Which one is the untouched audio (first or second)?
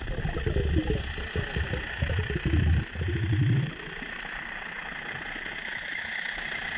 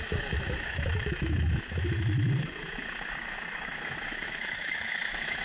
first